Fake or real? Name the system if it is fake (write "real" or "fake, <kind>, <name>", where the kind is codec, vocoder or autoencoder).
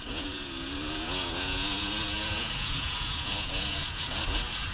fake, vocoder, Vocos